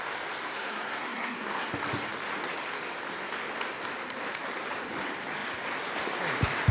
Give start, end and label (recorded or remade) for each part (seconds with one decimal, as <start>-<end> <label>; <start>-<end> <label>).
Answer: 0.0-0.4 recorded; 0.4-1.7 remade; 1.7-6.7 recorded